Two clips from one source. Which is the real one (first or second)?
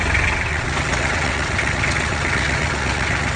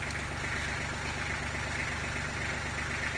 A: second